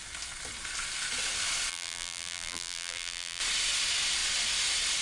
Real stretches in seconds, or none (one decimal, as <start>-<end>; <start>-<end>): 0.0-1.7; 3.4-5.0